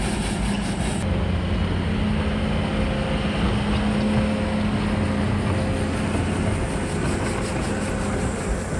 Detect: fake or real real